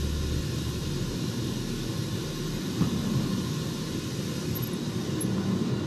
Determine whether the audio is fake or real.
real